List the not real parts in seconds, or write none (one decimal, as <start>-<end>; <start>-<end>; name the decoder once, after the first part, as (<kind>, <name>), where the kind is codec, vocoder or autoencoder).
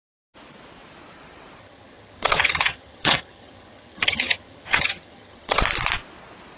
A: 1.6-5.6 (vocoder, HiFi-GAN)